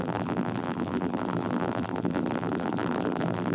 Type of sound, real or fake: fake